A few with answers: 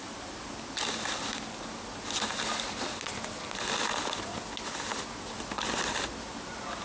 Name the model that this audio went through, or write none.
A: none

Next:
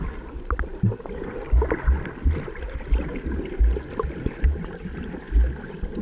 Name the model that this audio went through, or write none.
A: none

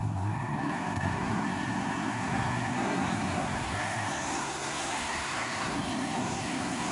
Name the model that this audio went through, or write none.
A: codec, SNAC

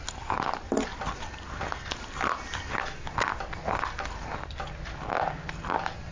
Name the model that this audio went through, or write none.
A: none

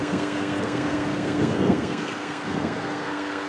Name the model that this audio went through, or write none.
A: codec, SNAC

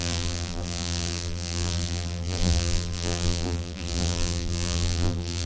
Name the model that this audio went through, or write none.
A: vocoder, BigVGAN v2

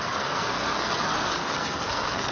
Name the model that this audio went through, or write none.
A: codec, SNAC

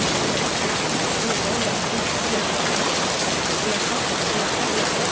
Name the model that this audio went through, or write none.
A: none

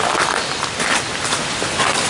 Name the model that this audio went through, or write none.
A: none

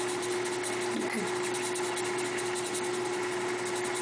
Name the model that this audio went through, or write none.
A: none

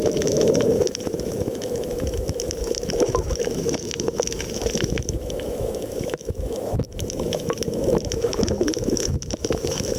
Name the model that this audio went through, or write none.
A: autoencoder, DAC-VAE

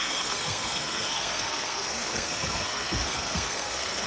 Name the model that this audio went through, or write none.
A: codec, SNAC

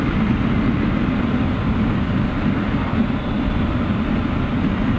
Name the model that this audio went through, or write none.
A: none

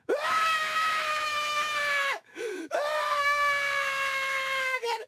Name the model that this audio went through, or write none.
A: autoencoder, DAC-VAE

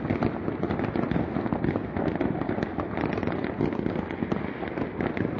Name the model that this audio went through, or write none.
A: none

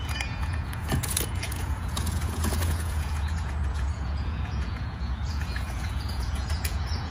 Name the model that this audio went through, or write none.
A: vocoder, Vocos